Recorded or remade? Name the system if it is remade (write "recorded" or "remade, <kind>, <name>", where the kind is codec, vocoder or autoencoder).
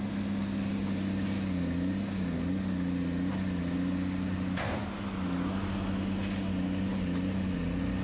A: recorded